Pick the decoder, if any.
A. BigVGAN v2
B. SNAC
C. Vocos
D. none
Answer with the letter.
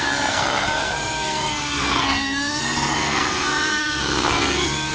B